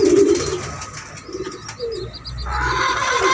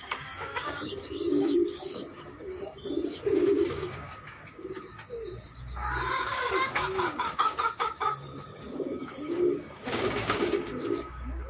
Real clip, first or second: first